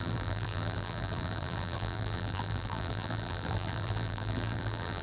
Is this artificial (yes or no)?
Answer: yes